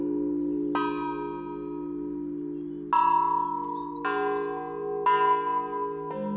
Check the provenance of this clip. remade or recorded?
recorded